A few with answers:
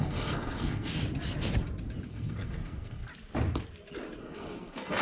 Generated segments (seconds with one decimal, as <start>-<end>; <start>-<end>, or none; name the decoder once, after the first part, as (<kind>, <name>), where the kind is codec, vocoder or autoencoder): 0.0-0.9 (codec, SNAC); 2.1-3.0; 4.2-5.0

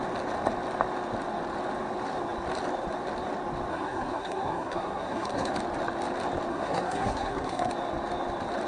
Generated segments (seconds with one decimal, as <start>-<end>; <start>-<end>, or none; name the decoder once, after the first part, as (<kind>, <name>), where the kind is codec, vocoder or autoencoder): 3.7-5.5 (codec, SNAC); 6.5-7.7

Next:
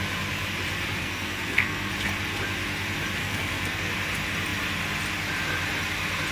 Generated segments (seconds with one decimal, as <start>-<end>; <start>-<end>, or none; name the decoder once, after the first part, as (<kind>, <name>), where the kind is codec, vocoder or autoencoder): 1.0-1.9 (codec, SNAC); 3.2-3.9